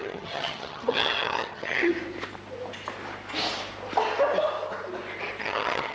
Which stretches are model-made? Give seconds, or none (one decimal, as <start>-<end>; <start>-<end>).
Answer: 0.0-1.9; 5.4-5.9